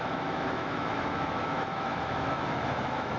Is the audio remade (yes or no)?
yes